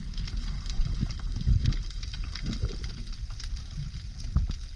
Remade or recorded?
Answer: recorded